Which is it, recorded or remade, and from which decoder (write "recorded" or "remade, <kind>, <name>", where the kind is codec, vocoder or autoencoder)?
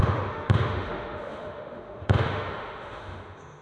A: remade, autoencoder, DAC-VAE